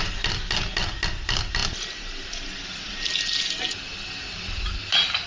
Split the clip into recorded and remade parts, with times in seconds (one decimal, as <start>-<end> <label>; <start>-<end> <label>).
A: 0.0-5.3 recorded